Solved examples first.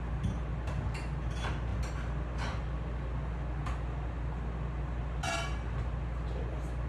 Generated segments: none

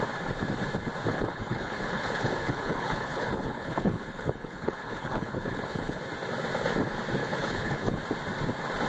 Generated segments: 1.1-6.0 (codec, HILCodec); 7.2-8.0

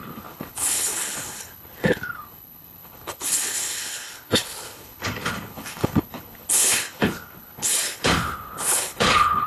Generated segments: 0.0-9.5 (codec, HILCodec)

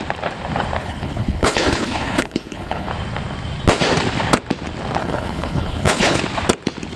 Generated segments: 0.8-2.9 (codec, HILCodec); 5.0-6.2

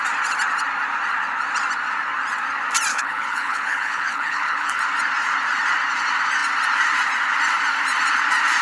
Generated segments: 2.9-4.8 (codec, HILCodec)

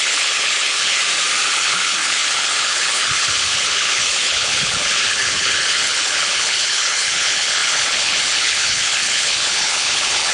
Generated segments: 0.0-1.0 (codec, HILCodec); 1.5-10.3

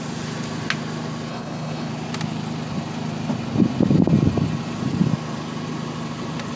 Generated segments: 1.3-1.9 (codec, HILCodec)

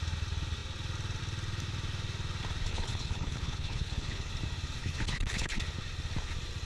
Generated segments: 2.7-4.3 (codec, HILCodec); 4.8-5.6